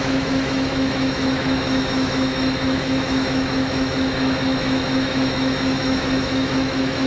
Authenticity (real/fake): fake